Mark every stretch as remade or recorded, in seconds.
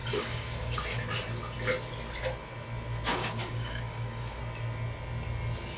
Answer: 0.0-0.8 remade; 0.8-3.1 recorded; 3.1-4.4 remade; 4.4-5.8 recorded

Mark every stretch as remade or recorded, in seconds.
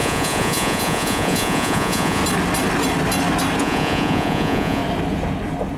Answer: 0.0-2.2 remade; 2.2-3.6 recorded; 3.6-4.8 remade; 4.8-5.8 recorded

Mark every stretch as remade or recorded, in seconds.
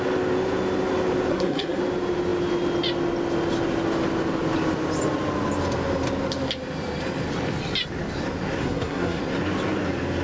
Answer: 0.0-1.3 recorded; 1.3-1.8 remade; 1.8-8.6 recorded; 8.6-9.2 remade; 9.2-10.2 recorded